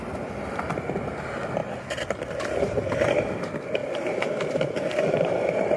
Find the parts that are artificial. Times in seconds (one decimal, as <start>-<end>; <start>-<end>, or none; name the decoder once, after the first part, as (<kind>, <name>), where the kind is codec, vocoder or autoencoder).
1.6-3.2 (vocoder, BigVGAN v2)